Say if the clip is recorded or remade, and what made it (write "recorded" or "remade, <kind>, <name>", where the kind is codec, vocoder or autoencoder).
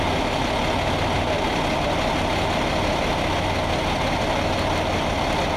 recorded